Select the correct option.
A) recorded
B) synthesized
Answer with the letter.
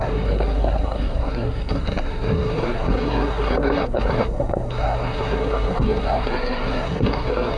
B